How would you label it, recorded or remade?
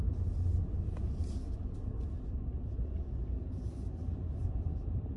recorded